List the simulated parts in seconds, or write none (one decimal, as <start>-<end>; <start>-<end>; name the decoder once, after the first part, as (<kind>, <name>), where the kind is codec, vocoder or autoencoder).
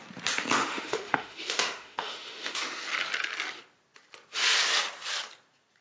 0.6-2.8 (autoencoder, DAC-VAE)